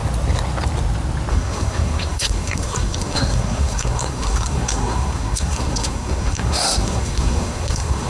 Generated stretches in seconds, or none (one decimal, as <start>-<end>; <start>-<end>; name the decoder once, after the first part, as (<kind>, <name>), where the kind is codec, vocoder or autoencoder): 1.3-8.1 (codec, SNAC)